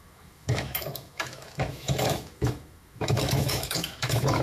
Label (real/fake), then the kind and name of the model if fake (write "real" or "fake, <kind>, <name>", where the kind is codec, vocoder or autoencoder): fake, autoencoder, DAC-VAE